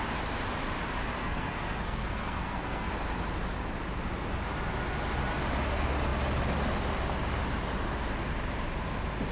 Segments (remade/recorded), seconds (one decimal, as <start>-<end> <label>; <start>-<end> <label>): 0.0-1.2 recorded; 1.2-2.9 remade; 2.9-9.3 recorded